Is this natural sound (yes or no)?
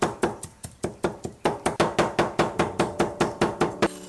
yes